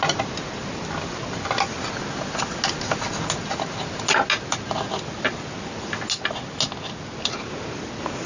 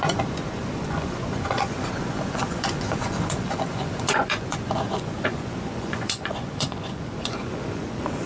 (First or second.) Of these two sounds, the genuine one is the first